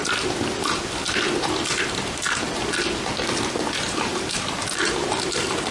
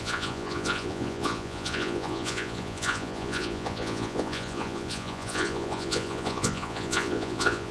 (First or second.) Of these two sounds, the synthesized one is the second